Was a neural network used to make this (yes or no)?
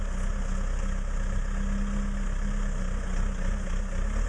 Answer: no